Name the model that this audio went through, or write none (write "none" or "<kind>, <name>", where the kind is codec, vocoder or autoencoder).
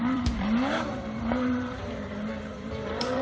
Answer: vocoder, BigVGAN v2